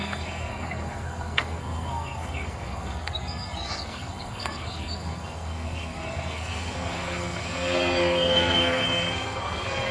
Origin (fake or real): fake